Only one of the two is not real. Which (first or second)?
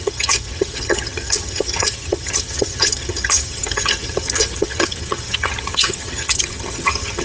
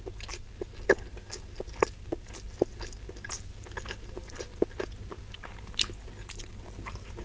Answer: first